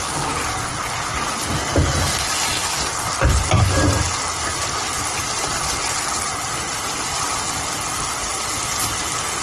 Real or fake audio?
real